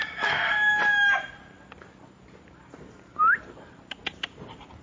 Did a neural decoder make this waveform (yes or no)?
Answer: no